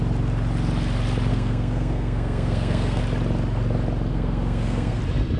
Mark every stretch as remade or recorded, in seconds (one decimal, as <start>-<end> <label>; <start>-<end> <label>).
0.0-1.3 recorded; 1.3-3.0 remade; 3.0-4.1 recorded; 4.1-5.0 remade; 5.0-5.4 recorded